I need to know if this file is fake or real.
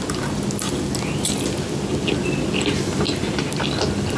real